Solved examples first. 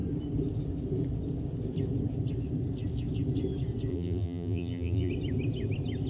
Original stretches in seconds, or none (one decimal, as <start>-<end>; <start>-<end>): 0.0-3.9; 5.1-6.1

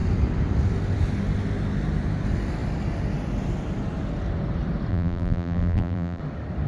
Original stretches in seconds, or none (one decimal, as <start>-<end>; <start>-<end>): 0.0-4.9; 6.2-6.7

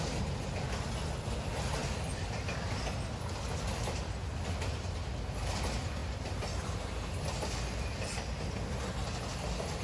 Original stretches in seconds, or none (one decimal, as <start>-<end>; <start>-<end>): 0.0-1.8; 3.0-6.0; 6.8-9.8

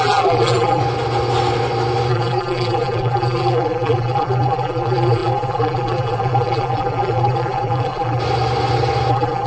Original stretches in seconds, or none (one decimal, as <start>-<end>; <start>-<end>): 0.8-2.1; 8.2-9.1

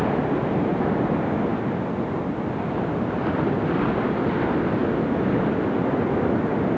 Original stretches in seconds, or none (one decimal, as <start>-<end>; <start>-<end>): 0.0-6.8